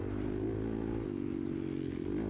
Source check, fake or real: real